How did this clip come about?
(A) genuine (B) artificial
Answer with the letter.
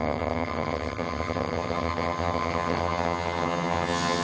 B